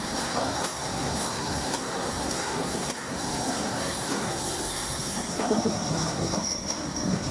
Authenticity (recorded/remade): remade